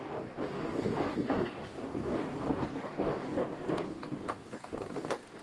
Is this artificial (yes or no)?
yes